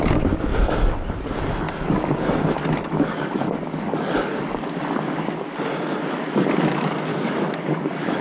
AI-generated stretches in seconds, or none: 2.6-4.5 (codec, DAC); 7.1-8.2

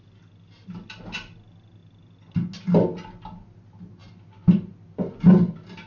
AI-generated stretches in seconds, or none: none

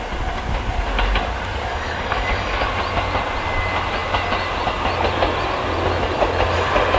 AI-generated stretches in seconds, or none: 1.7-2.6 (codec, DAC)

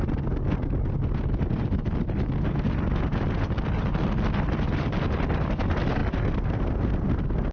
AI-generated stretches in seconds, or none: none

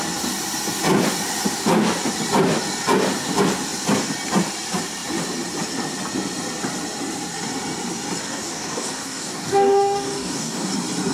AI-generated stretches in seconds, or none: 8.2-10.7 (codec, DAC)

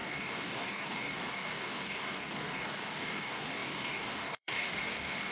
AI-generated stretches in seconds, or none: 0.0-5.3 (codec, DAC)

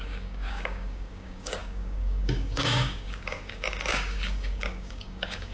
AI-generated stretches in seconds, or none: 0.0-5.5 (codec, DAC)